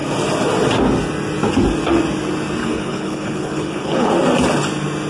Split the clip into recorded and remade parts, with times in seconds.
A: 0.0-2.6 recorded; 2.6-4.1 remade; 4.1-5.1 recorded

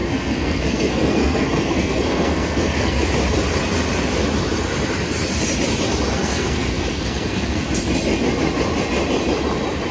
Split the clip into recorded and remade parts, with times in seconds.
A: 0.0-3.0 remade; 3.0-6.1 recorded; 6.1-7.6 remade; 7.6-9.9 recorded

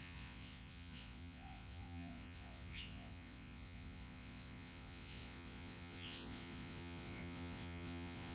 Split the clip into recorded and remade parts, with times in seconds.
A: 0.0-8.3 remade

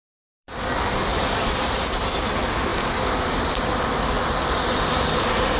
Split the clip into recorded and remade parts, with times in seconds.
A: 0.0-1.1 recorded; 1.1-1.9 remade; 1.9-5.6 recorded

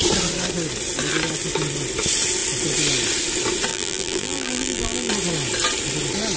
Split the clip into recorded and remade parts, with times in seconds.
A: 0.0-3.7 recorded; 3.7-5.1 remade; 5.1-6.4 recorded

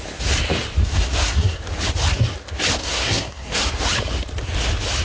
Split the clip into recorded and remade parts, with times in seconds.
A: 0.0-0.8 recorded; 0.8-1.6 remade; 1.6-2.8 recorded; 2.8-3.7 remade; 3.7-5.0 recorded